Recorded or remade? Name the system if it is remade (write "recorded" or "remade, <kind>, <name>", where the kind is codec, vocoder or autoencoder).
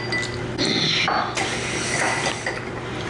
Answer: recorded